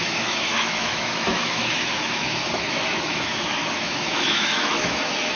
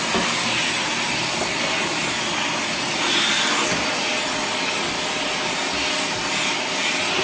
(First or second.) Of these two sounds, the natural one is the second